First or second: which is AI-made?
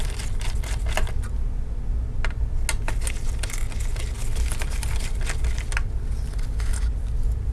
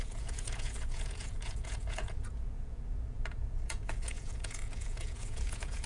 second